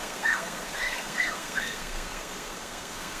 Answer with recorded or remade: remade